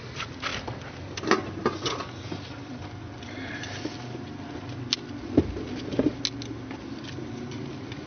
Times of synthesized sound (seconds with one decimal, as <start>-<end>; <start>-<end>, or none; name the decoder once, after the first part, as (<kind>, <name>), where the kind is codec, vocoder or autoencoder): 0.5-3.9 (vocoder, BigVGAN v2)